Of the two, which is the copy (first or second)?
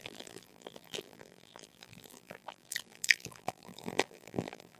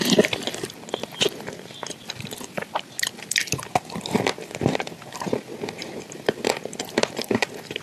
first